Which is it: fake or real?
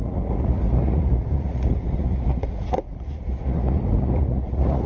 fake